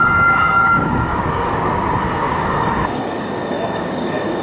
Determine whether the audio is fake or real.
fake